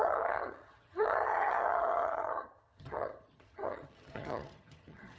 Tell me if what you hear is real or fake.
fake